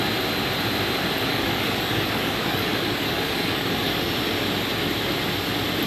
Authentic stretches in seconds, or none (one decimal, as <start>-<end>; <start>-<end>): 0.0-1.3; 4.1-5.9